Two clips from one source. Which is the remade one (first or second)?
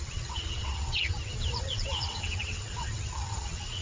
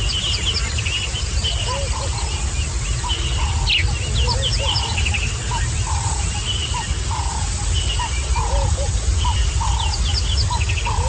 first